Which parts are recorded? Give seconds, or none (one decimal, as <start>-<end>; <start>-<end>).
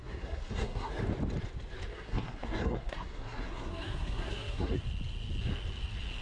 0.9-1.9; 4.8-6.2